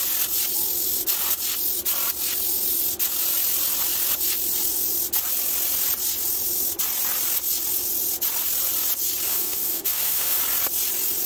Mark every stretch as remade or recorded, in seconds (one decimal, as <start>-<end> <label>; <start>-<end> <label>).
0.0-9.3 recorded; 9.3-10.4 remade; 10.4-11.3 recorded